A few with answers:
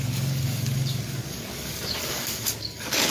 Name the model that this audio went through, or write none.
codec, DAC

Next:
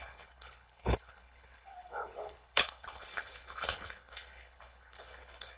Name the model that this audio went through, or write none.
codec, HILCodec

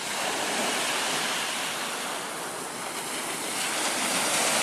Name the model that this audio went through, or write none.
none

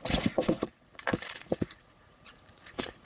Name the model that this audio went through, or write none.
vocoder, Vocos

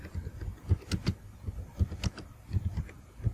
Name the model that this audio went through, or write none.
none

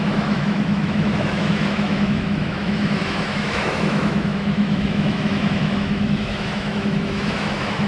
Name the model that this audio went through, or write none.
autoencoder, DAC-VAE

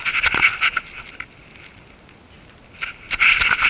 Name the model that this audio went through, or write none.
none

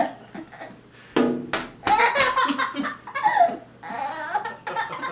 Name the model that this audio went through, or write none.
none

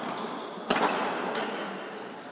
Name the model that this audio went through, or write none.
none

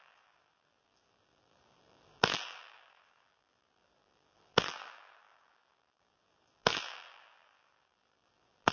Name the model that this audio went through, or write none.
vocoder, BigVGAN v2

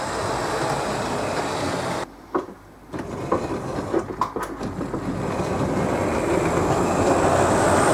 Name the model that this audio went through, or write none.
none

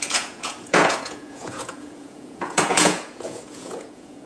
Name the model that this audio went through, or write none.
vocoder, Vocos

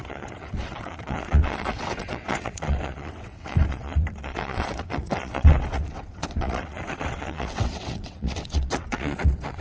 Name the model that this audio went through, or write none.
vocoder, WaveNeXt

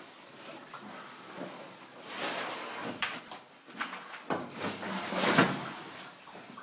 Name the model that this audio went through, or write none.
none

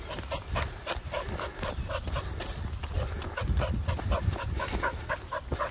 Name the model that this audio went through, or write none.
none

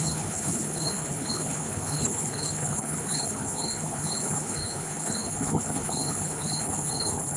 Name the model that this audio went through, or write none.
codec, HILCodec